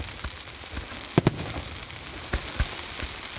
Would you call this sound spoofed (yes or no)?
no